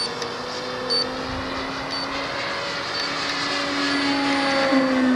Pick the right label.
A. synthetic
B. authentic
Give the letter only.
B